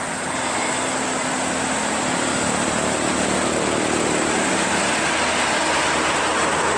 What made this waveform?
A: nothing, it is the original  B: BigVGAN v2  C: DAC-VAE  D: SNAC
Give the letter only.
A